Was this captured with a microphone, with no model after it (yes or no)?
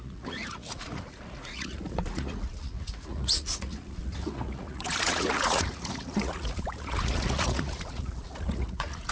no